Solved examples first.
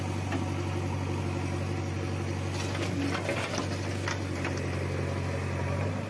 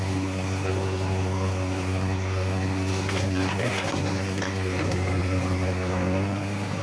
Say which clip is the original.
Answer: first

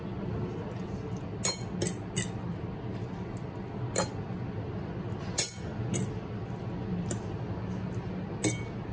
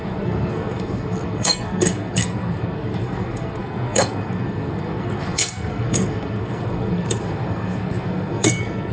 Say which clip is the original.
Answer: first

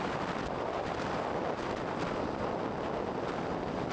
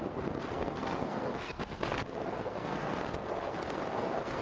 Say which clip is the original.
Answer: first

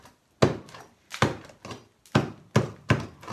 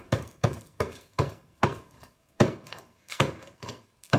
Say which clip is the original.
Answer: first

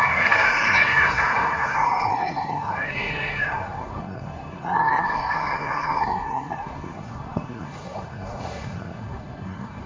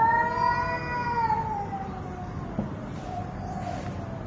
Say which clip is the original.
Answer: second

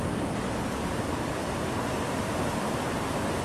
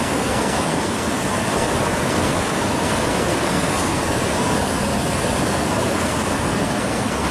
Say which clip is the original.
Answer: first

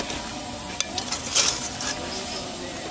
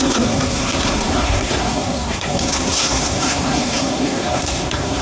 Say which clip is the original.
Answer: first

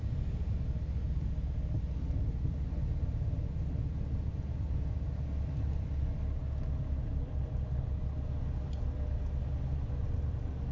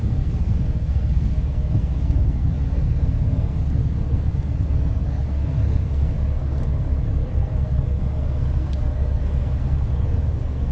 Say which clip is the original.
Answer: first